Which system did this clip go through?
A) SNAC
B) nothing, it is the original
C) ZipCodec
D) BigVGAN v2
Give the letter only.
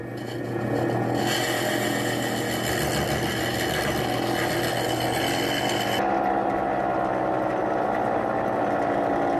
B